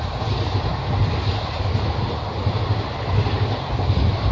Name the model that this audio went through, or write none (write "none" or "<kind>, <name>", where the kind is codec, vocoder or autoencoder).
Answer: none